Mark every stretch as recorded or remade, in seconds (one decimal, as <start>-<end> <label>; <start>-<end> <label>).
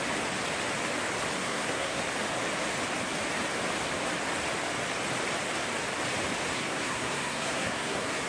0.0-1.4 recorded; 1.4-2.0 remade; 2.0-6.4 recorded; 6.4-8.3 remade